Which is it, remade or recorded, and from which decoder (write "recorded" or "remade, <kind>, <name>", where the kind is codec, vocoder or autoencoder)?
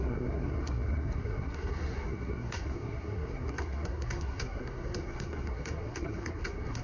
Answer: remade, codec, SNAC